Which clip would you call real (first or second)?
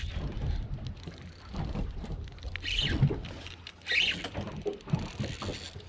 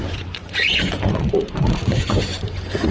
first